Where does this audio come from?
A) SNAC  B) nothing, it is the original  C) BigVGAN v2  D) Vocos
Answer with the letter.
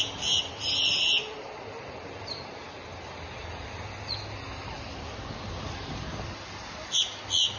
B